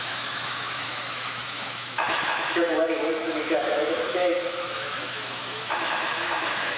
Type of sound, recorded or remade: remade